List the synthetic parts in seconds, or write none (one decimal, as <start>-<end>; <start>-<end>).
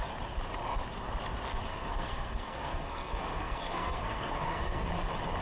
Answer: 1.7-4.9